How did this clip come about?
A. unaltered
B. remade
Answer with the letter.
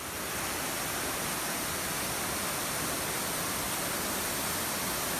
A